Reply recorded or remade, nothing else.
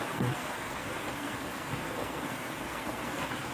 remade